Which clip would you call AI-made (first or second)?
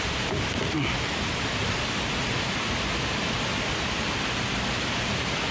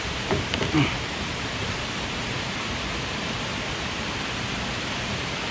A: second